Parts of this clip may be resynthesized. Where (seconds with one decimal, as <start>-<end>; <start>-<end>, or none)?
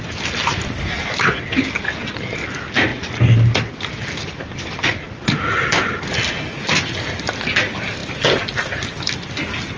none